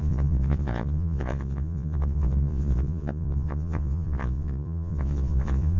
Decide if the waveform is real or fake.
fake